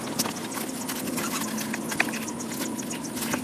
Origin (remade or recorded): recorded